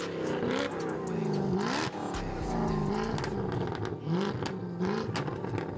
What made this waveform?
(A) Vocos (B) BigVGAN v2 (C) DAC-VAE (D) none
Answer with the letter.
D